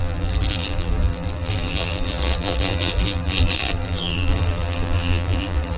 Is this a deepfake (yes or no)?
yes